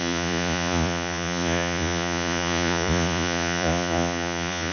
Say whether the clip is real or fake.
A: fake